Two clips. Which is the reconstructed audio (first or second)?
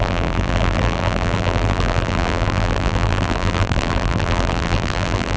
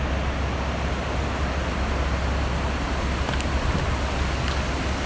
first